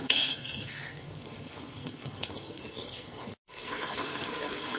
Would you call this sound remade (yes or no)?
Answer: yes